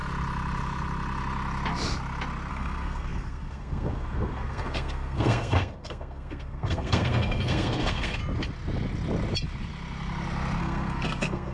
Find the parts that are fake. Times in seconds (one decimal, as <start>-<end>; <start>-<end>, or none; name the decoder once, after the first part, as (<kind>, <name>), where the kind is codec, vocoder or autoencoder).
2.5-8.2 (codec, SNAC); 10.6-11.5